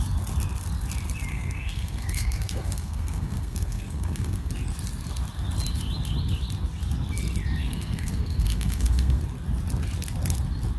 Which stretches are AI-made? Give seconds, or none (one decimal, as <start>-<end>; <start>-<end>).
1.3-4.5; 7.6-9.2